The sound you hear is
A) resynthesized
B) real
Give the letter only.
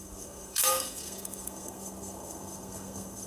A